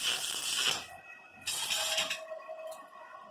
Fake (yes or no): no